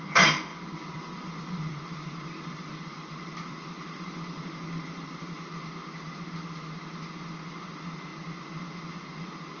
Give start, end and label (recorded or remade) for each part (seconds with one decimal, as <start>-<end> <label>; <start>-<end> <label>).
0.0-0.5 recorded; 0.5-5.7 remade; 5.7-9.6 recorded